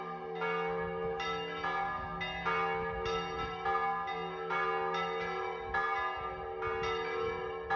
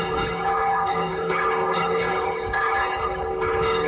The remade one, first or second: second